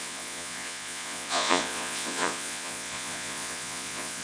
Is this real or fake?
fake